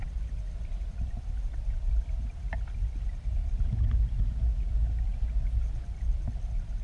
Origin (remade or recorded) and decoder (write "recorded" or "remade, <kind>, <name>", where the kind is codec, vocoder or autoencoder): recorded